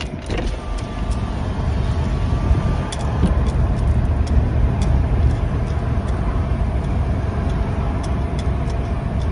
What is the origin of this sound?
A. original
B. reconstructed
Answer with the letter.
A